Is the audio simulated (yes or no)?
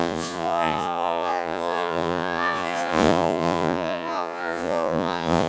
yes